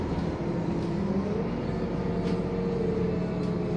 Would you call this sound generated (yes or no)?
no